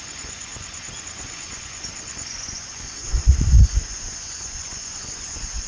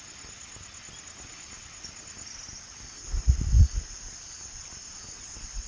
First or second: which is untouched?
second